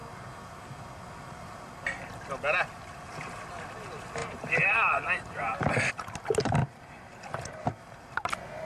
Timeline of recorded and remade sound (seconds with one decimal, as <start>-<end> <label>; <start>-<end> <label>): 0.0-4.2 recorded; 4.2-5.9 remade; 5.9-8.7 recorded

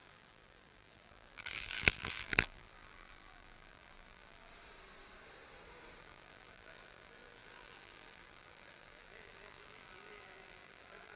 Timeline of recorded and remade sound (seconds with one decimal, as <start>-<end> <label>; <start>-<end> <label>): 0.0-4.5 remade; 4.5-6.0 recorded; 6.0-11.2 remade

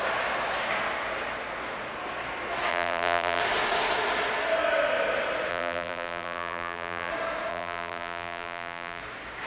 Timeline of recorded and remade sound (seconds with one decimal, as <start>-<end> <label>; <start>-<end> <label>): 0.0-2.7 recorded; 2.7-3.4 remade; 3.4-5.5 recorded; 5.5-7.1 remade; 7.1-7.5 recorded; 7.5-9.0 remade; 9.0-9.5 recorded

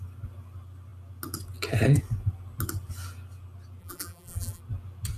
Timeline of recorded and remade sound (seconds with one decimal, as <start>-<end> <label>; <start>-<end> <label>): 0.0-3.8 recorded; 3.8-4.6 remade; 4.6-5.2 recorded

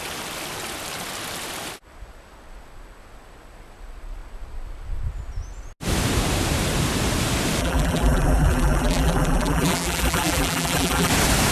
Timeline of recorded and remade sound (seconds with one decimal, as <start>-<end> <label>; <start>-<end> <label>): 0.0-7.6 recorded; 7.6-11.1 remade; 11.1-11.5 recorded

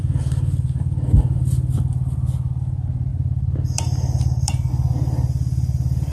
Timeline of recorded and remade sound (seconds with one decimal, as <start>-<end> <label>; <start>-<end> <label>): 0.0-3.1 recorded; 3.1-4.7 remade; 4.7-6.1 recorded